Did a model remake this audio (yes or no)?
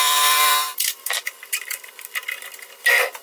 yes